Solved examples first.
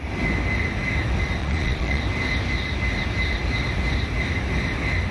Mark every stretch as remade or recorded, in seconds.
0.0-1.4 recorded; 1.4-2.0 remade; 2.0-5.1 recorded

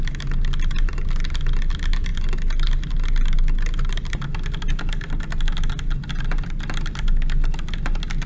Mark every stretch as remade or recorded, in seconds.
0.0-8.3 recorded

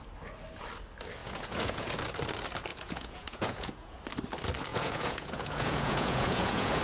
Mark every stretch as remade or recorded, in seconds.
0.0-1.2 recorded; 1.2-1.9 remade; 1.9-2.7 recorded; 2.7-4.0 remade; 4.0-4.7 recorded; 4.7-6.8 remade

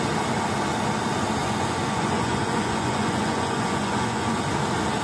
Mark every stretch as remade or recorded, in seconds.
0.0-1.4 recorded; 1.4-4.4 remade; 4.4-5.0 recorded

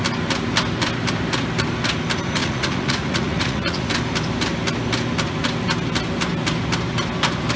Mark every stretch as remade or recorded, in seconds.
0.0-2.4 recorded; 2.4-3.9 remade; 3.9-7.6 recorded

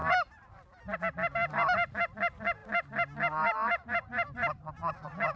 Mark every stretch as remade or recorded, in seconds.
0.0-5.4 recorded

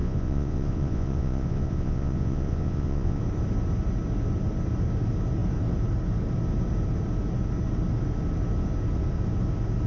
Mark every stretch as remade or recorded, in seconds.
0.0-3.2 remade; 3.2-9.9 recorded

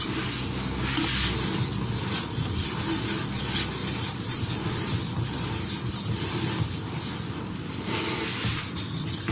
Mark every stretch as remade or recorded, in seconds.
0.0-9.3 recorded